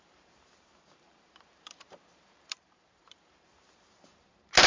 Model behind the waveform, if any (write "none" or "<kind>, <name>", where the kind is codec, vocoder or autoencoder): vocoder, BigVGAN v2